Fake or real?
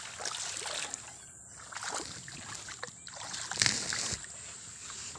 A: real